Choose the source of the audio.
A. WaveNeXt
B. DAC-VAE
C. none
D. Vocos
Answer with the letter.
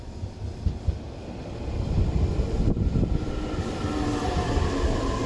C